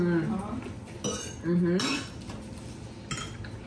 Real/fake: real